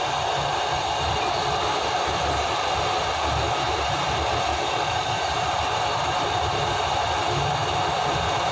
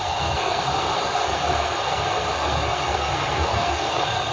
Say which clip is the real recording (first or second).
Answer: first